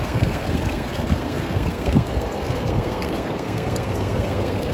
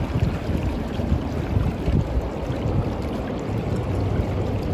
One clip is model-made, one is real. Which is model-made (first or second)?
first